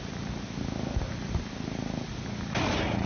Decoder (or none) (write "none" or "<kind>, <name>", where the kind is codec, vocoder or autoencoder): none